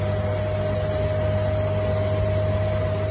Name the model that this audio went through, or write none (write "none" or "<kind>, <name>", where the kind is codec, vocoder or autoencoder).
none